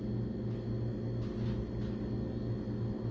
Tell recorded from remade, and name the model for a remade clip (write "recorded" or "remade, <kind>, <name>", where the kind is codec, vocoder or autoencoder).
recorded